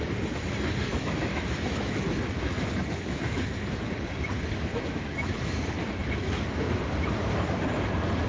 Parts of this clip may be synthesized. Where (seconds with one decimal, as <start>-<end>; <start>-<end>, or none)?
0.9-3.9; 4.7-6.8